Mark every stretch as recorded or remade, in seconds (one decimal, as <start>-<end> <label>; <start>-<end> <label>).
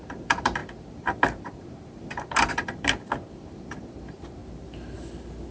0.0-4.4 remade; 4.4-5.5 recorded